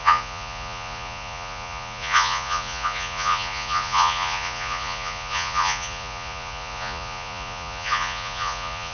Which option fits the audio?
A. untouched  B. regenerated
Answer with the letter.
B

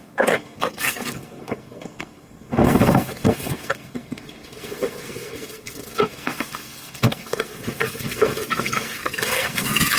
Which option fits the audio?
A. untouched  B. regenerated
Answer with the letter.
B